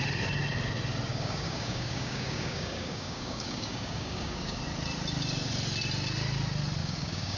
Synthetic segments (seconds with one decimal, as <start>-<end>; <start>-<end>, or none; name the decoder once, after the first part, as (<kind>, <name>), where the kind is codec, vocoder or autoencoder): 1.1-4.6 (codec, DAC); 6.8-7.4